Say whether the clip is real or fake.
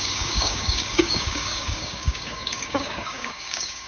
fake